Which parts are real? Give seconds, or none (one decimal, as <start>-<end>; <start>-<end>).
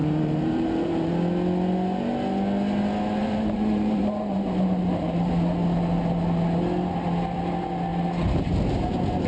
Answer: 1.1-3.2; 5.3-7.9; 8.4-9.3